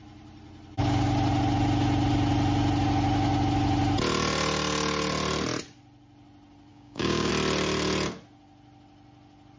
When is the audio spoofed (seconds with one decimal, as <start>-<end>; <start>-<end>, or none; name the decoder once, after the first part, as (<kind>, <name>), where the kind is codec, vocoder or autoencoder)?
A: 6.7-7.3 (codec, DAC)